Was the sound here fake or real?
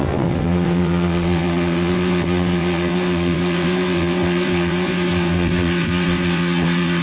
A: fake